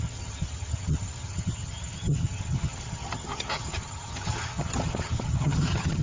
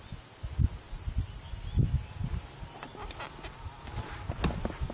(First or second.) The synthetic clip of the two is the first